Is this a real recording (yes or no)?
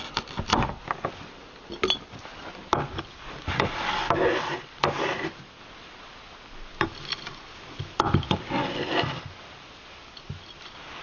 yes